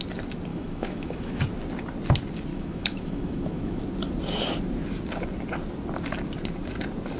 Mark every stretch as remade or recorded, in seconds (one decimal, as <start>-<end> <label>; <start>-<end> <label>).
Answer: 0.0-0.5 recorded; 0.5-1.4 remade; 1.4-2.5 recorded; 2.5-3.8 remade; 3.8-7.2 recorded